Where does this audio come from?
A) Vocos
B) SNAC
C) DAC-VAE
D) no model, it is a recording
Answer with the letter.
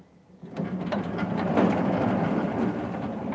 D